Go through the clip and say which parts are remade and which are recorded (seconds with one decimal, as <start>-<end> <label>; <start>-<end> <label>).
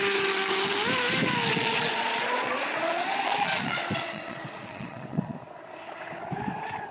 0.0-1.5 recorded; 1.5-5.4 remade; 5.4-6.9 recorded